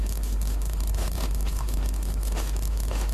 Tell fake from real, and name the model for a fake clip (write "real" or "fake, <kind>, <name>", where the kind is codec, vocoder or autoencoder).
fake, autoencoder, DAC-VAE